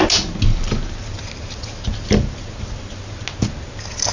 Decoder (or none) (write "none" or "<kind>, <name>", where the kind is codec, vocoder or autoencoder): none